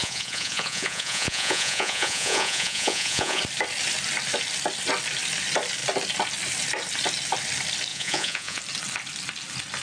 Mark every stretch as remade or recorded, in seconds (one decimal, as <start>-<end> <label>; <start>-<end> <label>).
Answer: 0.0-3.4 remade; 3.4-7.9 recorded; 7.9-8.6 remade; 8.6-9.8 recorded